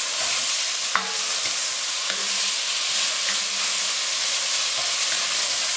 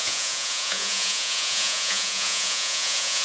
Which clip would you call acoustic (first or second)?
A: first